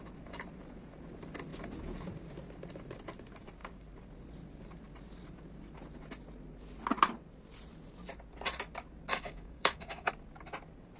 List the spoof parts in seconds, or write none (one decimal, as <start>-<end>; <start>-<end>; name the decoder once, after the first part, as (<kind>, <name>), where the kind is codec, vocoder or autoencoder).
9.1-10.1 (codec, DAC)